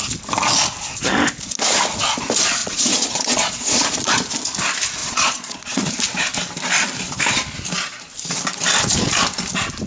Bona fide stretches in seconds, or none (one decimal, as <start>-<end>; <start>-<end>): 0.0-2.6; 4.1-5.0; 5.9-9.9